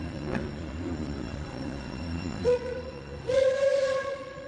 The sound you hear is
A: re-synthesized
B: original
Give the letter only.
A